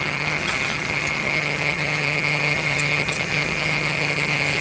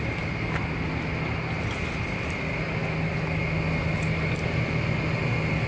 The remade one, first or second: first